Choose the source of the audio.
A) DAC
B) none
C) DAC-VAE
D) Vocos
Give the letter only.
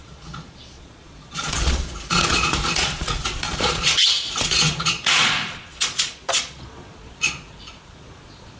D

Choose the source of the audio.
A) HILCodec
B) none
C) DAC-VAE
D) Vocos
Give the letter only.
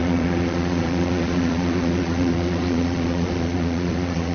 D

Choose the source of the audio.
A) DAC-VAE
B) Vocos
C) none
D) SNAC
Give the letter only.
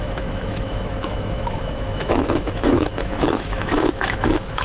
A